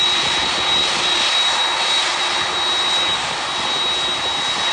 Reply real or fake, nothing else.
real